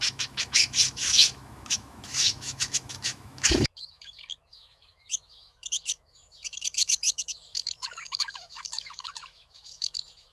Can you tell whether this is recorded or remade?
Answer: remade